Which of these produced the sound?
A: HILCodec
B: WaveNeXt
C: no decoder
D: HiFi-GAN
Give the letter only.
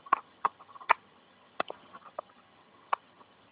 D